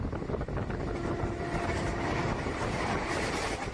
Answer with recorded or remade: recorded